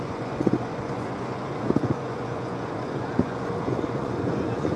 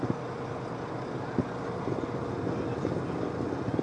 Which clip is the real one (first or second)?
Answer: second